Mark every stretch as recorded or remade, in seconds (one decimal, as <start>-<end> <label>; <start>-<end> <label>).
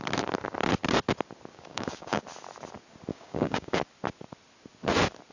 0.0-1.5 recorded; 1.5-2.2 remade; 2.2-3.1 recorded; 3.1-3.8 remade; 3.8-5.3 recorded